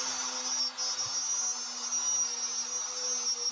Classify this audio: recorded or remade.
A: recorded